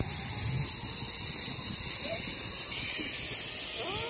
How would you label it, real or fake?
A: real